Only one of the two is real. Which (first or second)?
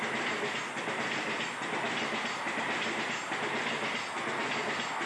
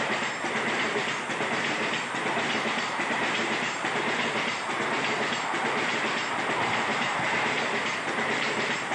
first